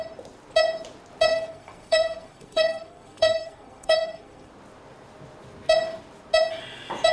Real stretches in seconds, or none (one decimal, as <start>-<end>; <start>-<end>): 0.0-1.3; 4.5-7.1